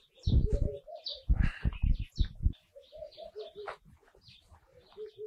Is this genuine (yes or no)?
yes